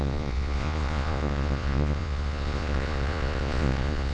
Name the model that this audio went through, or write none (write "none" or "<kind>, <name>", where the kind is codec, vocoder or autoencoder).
vocoder, Vocos